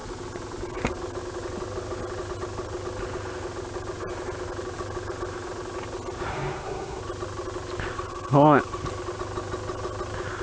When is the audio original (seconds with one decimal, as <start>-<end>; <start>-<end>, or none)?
0.0-6.3; 7.0-10.4